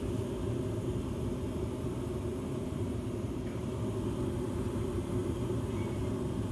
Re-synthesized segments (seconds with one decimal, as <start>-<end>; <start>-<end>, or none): 2.3-3.6; 5.2-6.0

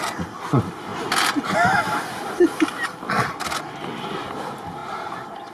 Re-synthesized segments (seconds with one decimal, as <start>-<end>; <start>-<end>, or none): 0.0-0.9; 4.2-4.8